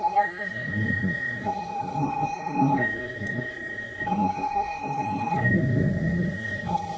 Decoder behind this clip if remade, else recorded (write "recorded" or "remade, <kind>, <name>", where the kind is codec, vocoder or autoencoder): remade, codec, SNAC